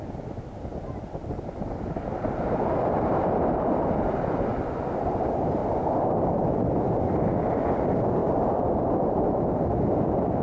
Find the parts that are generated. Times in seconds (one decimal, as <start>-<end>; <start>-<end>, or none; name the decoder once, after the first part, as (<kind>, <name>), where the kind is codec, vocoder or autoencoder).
5.6-6.8 (vocoder, BigVGAN v2); 8.2-9.8